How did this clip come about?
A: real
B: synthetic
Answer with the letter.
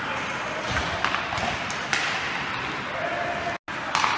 A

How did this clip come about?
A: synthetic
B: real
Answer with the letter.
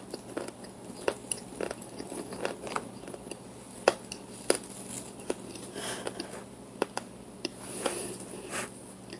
B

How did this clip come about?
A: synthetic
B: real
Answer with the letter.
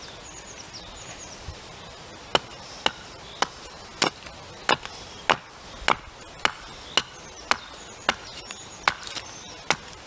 B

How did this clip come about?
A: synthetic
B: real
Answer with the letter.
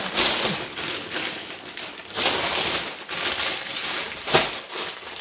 B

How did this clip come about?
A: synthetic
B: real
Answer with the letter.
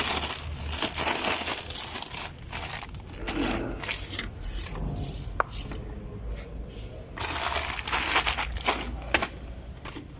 B